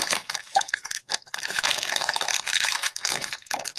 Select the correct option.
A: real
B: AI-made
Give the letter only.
B